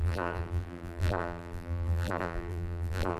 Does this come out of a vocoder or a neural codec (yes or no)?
yes